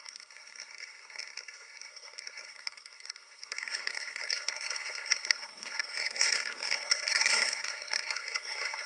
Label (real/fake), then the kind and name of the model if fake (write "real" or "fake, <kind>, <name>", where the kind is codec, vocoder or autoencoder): fake, codec, SNAC